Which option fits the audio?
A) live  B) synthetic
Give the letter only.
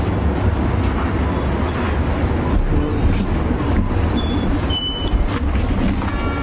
A